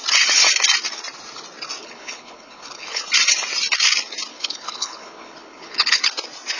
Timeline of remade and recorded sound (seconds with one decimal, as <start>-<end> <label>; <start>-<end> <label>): 0.0-1.8 recorded; 1.8-3.0 remade; 3.0-4.3 recorded; 4.3-6.0 remade; 6.0-6.6 recorded

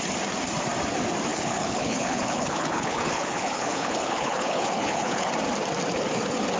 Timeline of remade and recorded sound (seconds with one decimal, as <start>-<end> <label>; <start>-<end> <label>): 0.0-1.3 recorded; 1.3-5.3 remade; 5.3-6.6 recorded

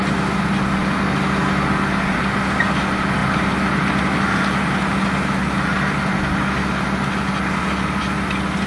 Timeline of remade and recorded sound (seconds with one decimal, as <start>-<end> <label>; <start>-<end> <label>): 0.0-8.7 recorded

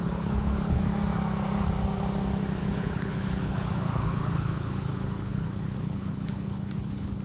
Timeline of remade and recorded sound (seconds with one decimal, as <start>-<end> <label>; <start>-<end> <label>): 0.0-0.8 remade; 0.8-2.6 recorded; 2.6-7.2 remade

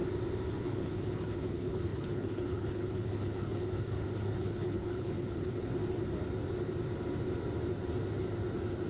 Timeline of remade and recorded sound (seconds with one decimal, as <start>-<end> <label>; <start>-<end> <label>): 0.0-0.5 recorded; 0.5-5.7 remade; 5.7-8.9 recorded

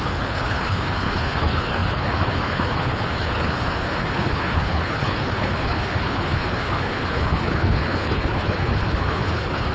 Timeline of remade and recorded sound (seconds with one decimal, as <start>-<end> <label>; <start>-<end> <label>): 0.0-9.7 remade

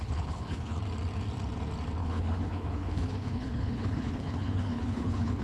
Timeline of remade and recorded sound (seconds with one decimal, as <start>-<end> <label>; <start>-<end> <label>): 0.0-0.8 remade; 0.8-2.0 recorded; 2.0-5.4 remade